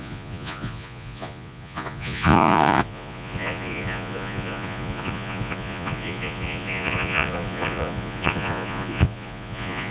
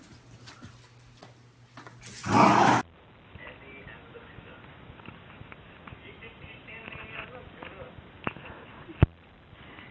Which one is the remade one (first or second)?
first